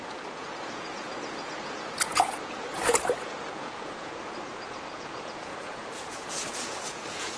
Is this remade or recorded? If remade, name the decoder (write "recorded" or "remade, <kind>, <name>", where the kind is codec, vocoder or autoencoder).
remade, vocoder, Vocos